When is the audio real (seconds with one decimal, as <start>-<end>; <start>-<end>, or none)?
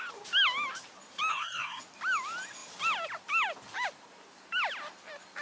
0.0-1.3; 1.8-5.4